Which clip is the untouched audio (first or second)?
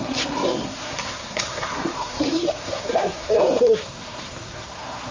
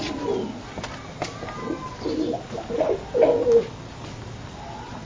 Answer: second